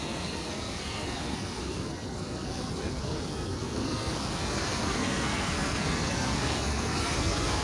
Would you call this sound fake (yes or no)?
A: yes